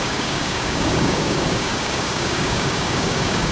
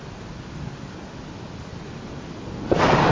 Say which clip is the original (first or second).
second